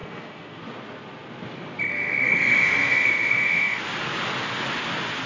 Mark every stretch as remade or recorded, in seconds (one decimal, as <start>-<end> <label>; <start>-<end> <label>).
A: 0.0-0.6 remade; 0.6-1.9 recorded; 1.9-3.8 remade; 3.8-5.3 recorded